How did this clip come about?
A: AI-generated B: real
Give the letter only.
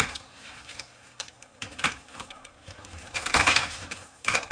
A